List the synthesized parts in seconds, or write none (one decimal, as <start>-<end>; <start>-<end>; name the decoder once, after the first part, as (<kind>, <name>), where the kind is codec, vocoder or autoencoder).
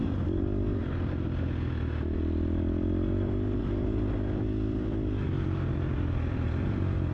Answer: 0.0-0.8 (vocoder, BigVGAN v2); 3.6-7.1